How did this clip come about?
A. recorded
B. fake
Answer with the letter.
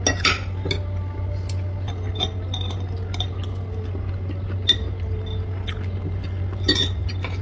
A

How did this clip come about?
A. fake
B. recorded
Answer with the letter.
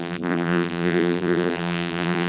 A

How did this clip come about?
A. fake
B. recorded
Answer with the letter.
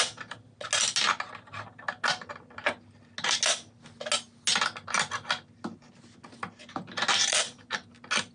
B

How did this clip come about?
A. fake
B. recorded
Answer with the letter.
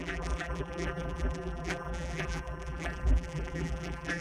A